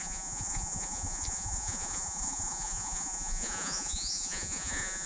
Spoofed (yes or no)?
yes